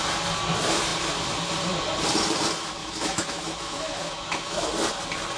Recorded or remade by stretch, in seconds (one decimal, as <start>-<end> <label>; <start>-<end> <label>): 0.0-2.8 recorded; 2.8-4.7 remade; 4.7-5.4 recorded